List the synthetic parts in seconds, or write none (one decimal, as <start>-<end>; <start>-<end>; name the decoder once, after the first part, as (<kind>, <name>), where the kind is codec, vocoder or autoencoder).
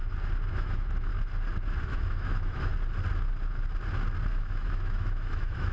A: 0.5-1.1 (autoencoder, DAC-VAE); 1.8-2.7; 4.3-5.7